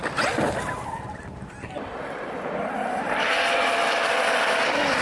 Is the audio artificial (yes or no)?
no